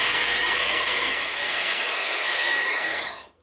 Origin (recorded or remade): remade